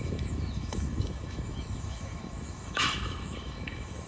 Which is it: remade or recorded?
remade